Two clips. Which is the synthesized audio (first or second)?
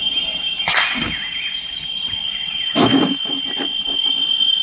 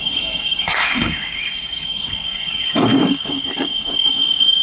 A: second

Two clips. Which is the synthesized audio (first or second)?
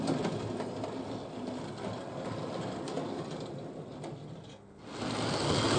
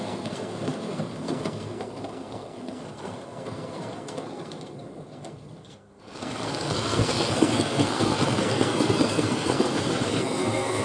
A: second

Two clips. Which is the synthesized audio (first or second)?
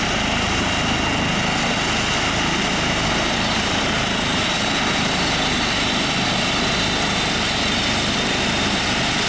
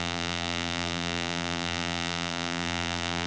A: second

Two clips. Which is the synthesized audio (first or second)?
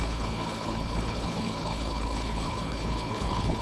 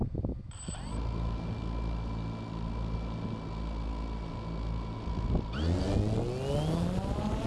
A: first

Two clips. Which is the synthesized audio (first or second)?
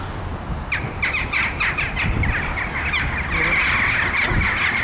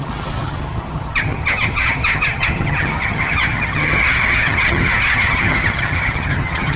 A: second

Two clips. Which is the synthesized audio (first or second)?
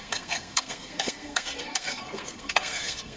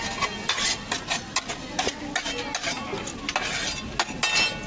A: first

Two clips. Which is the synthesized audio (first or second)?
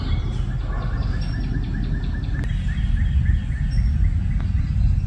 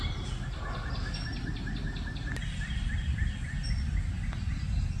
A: second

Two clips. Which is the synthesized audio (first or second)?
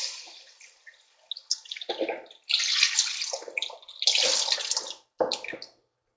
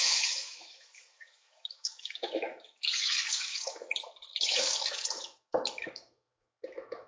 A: second